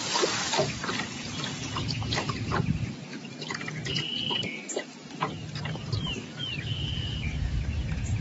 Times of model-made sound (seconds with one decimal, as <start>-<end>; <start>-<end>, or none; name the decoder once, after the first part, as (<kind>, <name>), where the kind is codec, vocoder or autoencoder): 3.1-8.2 (vocoder, BigVGAN v2)